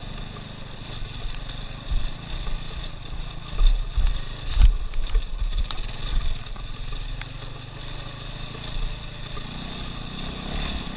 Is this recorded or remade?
recorded